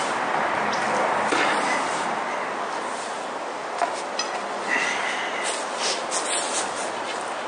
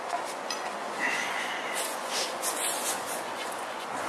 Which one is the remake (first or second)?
second